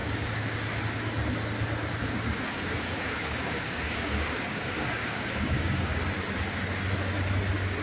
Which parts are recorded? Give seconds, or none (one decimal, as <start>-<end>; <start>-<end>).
0.8-2.0; 6.0-7.8